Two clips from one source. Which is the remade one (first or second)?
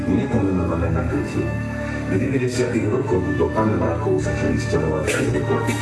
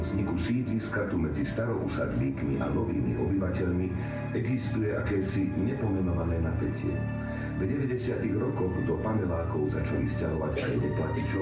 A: first